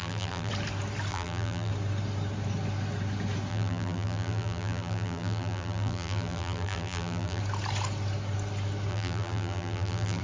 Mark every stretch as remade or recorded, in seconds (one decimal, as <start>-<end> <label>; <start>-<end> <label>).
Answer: 0.0-0.5 remade; 0.5-1.1 recorded; 1.1-1.7 remade; 1.7-3.5 recorded; 3.5-7.4 remade; 7.4-8.9 recorded; 8.9-10.2 remade